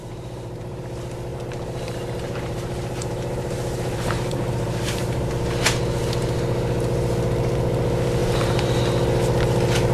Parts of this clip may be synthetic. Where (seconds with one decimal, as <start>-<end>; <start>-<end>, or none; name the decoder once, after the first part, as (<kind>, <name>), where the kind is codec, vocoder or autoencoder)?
0.0-0.8 (vocoder, BigVGAN v2); 1.3-5.3; 8.2-8.8

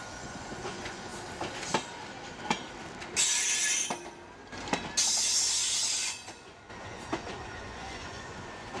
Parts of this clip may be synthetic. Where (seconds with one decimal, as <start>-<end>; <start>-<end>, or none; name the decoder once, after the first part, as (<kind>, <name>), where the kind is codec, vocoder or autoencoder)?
0.0-1.1 (vocoder, Vocos); 5.9-8.8